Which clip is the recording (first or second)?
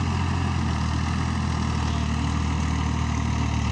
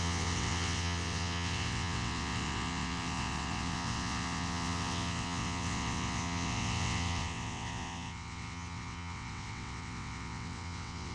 first